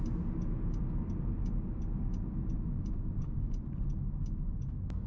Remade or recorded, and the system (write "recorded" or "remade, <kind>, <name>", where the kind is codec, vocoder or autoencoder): recorded